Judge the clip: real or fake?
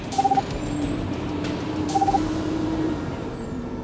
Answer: fake